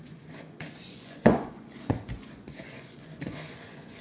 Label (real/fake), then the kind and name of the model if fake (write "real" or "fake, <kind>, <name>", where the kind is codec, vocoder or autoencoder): fake, vocoder, Vocos